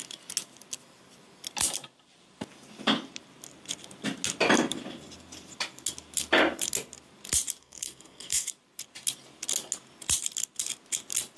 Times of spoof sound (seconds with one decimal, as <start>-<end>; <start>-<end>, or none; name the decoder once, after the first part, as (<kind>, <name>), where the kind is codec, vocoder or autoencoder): 7.6-8.5 (codec, SNAC)